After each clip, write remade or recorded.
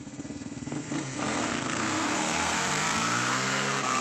remade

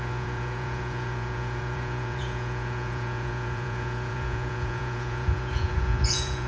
remade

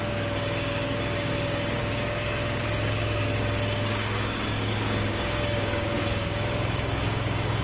remade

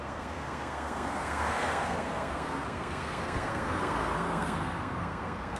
remade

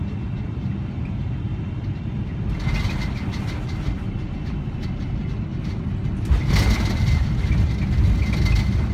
recorded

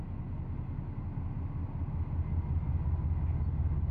recorded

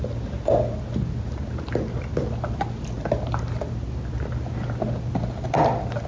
recorded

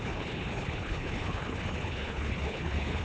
remade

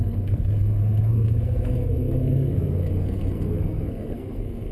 remade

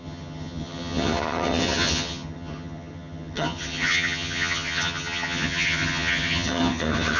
remade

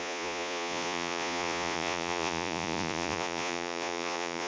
remade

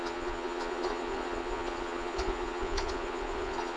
remade